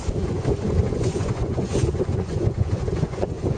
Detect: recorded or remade remade